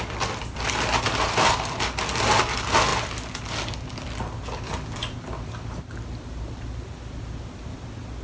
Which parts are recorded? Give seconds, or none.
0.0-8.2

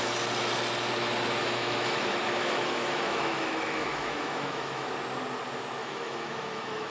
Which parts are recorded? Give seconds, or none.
0.0-1.4; 4.9-5.8

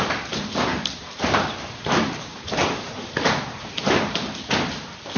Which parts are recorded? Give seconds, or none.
0.0-5.2

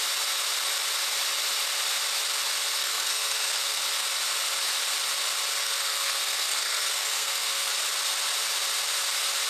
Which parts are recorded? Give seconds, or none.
0.0-2.8; 3.8-5.6; 7.7-9.5

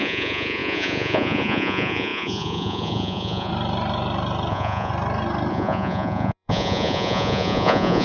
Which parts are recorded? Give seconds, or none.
3.5-4.5; 4.9-5.5